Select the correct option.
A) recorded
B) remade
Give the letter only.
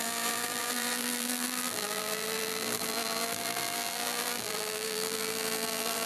B